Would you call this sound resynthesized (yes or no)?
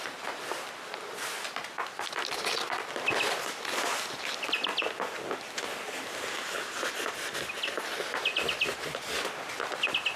no